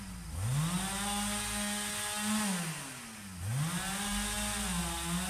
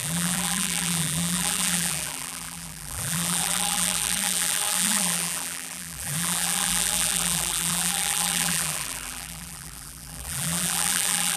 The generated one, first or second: second